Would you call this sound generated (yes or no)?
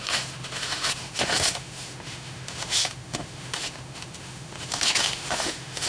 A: yes